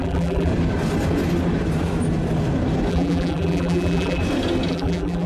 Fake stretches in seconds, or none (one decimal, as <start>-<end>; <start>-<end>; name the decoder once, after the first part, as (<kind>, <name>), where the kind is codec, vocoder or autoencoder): 0.0-0.5 (vocoder, BigVGAN v2); 2.9-4.2; 4.7-5.3